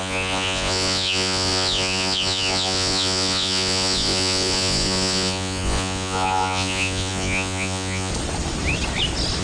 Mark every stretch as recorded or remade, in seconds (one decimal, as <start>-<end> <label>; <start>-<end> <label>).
0.0-8.1 remade; 8.1-9.4 recorded